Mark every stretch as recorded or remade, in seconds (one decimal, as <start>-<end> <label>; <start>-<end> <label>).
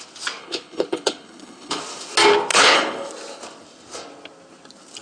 0.0-0.4 recorded; 0.4-1.8 remade; 1.8-2.5 recorded; 2.5-3.1 remade; 3.1-5.0 recorded